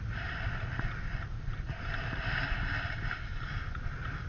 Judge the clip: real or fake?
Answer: real